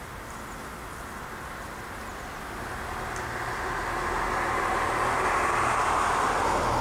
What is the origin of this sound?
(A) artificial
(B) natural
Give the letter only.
B